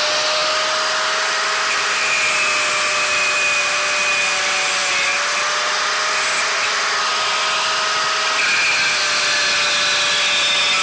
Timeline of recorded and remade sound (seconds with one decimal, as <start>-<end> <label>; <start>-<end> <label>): 0.0-10.8 recorded